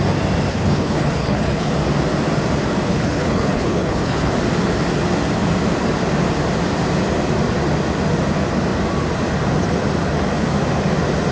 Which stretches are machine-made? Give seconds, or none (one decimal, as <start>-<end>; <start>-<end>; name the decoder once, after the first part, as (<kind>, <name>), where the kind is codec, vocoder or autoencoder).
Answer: 0.5-1.7 (codec, HILCodec); 2.9-4.3